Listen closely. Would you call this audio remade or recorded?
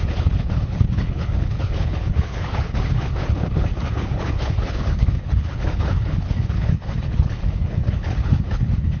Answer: remade